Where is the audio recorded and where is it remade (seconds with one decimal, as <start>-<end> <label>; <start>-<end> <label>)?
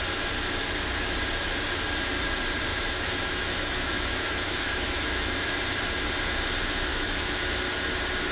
0.0-2.7 recorded; 2.7-5.5 remade; 5.5-6.9 recorded; 6.9-7.4 remade; 7.4-8.3 recorded